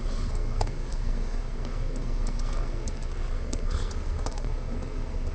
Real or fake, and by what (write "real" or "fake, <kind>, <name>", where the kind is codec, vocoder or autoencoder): fake, codec, SNAC